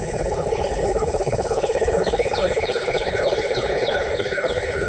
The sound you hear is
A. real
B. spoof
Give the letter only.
B